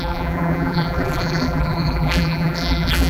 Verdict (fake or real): fake